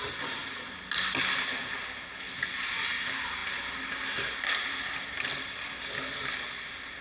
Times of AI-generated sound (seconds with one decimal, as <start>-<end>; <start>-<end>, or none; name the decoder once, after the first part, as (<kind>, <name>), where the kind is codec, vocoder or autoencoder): none